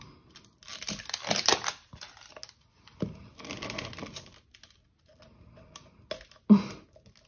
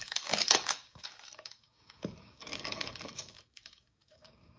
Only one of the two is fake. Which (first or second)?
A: second